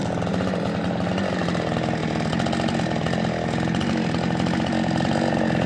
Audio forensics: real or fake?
real